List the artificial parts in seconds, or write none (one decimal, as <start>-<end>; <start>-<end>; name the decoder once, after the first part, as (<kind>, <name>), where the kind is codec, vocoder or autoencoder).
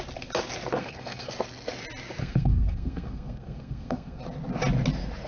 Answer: 0.8-1.3 (codec, SNAC); 2.2-4.2